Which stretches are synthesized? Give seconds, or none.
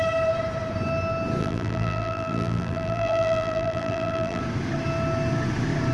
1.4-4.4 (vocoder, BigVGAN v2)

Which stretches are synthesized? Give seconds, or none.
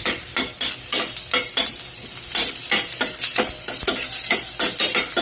none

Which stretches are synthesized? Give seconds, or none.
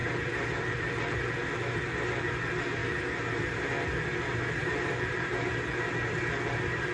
0.0-1.3 (vocoder, BigVGAN v2); 2.8-3.7; 4.6-5.5